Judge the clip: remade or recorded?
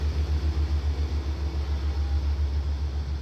recorded